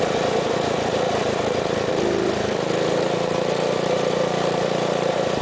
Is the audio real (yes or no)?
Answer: no